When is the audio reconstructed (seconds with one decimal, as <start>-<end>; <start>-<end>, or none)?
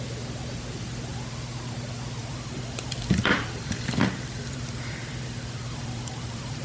2.2-6.6